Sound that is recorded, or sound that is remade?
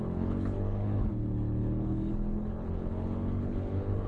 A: remade